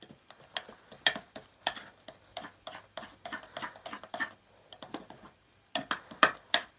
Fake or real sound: real